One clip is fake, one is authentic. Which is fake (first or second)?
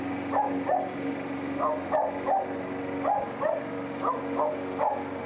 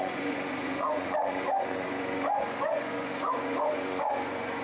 second